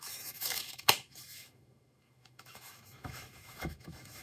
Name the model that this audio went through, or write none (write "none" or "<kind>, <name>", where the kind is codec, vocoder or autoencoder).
autoencoder, DAC-VAE